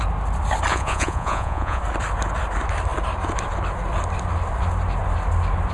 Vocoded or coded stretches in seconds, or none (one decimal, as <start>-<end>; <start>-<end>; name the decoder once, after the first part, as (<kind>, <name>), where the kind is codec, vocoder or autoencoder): 0.7-1.8 (vocoder, Vocos)